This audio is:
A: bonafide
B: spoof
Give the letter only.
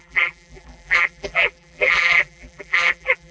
B